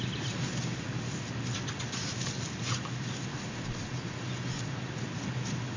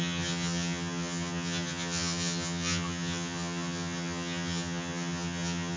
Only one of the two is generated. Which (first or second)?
second